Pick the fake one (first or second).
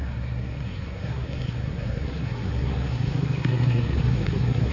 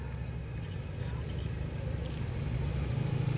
first